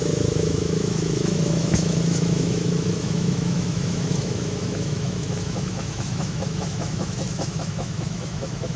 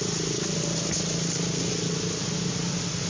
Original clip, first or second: second